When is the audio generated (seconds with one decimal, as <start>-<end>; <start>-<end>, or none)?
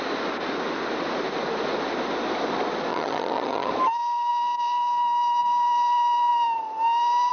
2.9-3.7